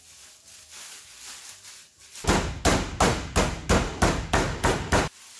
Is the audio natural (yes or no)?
yes